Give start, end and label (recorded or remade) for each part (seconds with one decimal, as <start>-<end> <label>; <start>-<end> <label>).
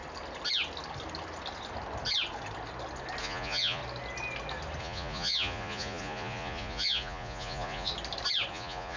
0.0-3.2 recorded; 3.2-3.8 remade; 3.8-4.8 recorded; 4.8-7.9 remade; 7.9-8.5 recorded; 8.5-9.0 remade